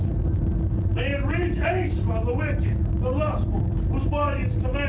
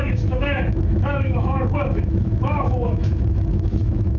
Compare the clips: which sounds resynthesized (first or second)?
second